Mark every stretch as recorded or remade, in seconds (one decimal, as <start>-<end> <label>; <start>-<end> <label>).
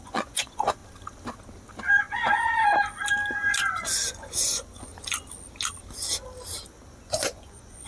0.0-0.8 remade; 0.8-2.0 recorded; 2.0-2.6 remade; 2.6-3.3 recorded; 3.3-4.9 remade; 4.9-6.9 recorded; 6.9-7.9 remade